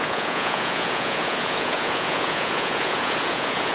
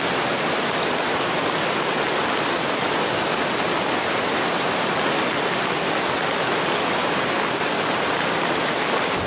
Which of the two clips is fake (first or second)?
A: first